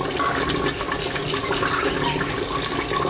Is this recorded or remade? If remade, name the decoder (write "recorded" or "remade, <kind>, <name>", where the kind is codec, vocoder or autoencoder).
recorded